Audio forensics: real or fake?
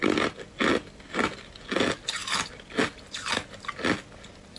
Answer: real